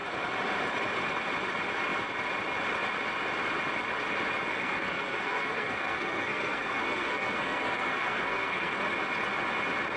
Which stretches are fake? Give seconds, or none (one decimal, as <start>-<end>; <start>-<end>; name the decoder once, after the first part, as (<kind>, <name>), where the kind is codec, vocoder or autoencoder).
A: 4.5-8.8 (codec, SNAC)